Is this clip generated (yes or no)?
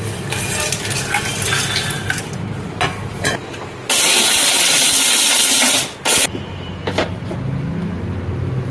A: no